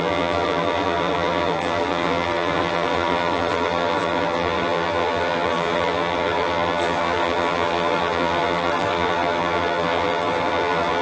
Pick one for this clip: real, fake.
fake